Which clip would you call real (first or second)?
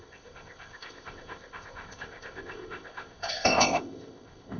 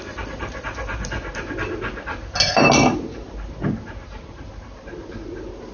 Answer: second